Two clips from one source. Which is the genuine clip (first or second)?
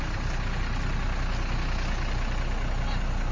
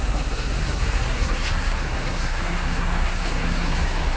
first